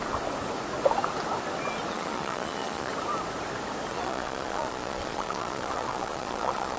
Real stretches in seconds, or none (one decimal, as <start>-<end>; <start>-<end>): 0.0-1.9; 2.9-3.9